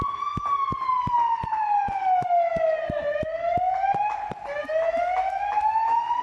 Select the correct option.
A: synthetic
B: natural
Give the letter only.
B